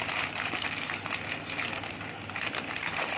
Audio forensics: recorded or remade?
recorded